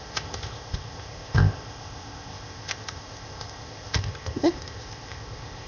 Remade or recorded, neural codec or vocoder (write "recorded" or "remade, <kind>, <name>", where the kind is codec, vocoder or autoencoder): remade, codec, ZipCodec